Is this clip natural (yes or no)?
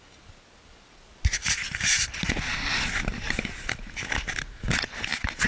yes